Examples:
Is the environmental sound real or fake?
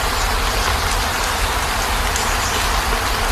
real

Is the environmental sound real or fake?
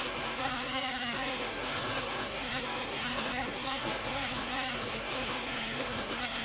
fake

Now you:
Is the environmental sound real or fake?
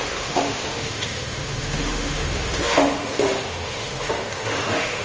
fake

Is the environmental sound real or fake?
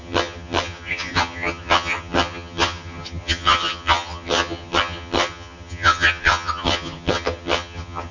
fake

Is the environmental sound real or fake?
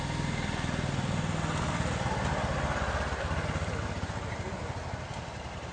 real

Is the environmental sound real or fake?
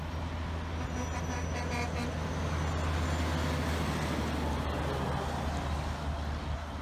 real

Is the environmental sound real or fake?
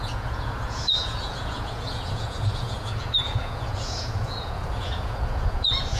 fake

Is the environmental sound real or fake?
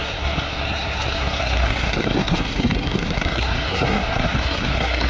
fake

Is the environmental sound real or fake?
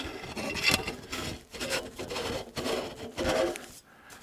real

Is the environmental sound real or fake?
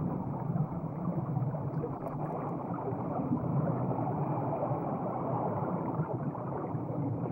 fake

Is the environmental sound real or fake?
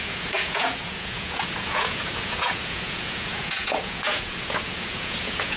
fake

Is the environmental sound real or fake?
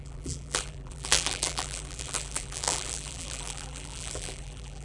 fake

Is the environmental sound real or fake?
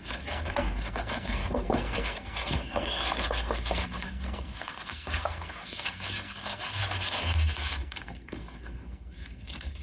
fake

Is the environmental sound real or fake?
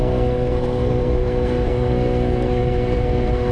fake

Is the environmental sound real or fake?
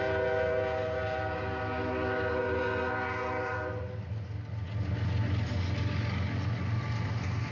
real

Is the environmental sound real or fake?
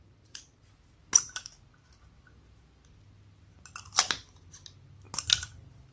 real